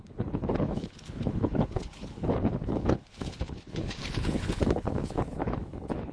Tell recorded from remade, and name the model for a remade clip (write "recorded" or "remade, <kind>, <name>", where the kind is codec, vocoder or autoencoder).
remade, codec, HILCodec